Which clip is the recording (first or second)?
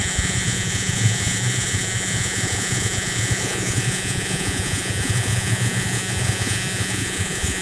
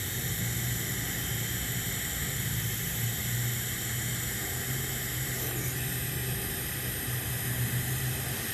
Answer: second